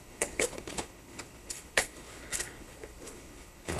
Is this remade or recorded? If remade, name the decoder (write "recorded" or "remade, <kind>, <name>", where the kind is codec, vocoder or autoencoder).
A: remade, codec, HILCodec